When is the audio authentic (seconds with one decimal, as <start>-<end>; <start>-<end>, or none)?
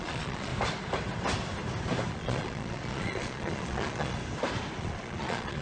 0.5-2.1; 4.2-4.8